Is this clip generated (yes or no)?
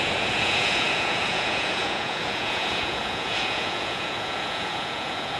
yes